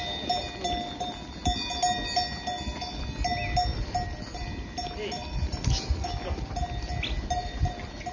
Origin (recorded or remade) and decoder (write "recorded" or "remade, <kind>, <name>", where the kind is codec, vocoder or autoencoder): recorded